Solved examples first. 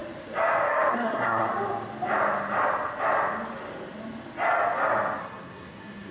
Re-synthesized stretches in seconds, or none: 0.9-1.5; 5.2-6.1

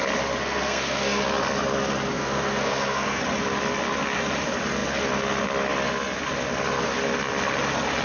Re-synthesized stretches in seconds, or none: 0.4-1.2; 2.1-3.2

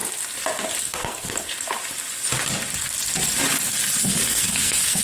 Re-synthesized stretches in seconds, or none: 0.8-1.5; 4.0-5.0

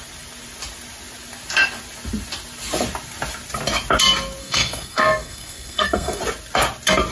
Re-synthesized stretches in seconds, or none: 4.4-6.2

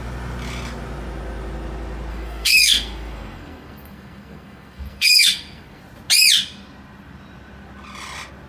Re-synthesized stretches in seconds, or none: 2.1-5.8

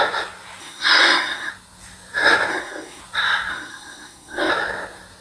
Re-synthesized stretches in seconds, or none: 0.6-1.5; 2.5-3.0; 3.5-4.5

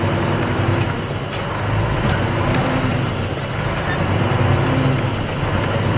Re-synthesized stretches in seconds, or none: none

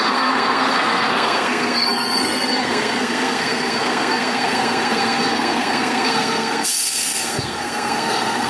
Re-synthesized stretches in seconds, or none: 0.0-8.5